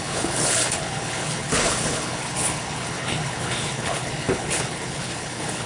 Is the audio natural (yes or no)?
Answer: no